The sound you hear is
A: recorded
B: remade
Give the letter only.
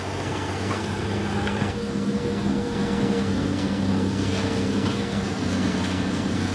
B